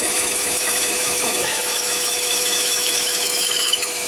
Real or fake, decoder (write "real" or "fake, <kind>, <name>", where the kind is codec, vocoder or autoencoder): fake, autoencoder, DAC-VAE